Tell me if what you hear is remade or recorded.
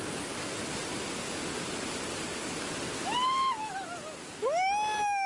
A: recorded